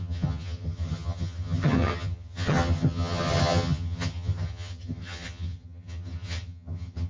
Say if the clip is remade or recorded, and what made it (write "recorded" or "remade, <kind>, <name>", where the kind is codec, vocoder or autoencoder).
remade, vocoder, HiFi-GAN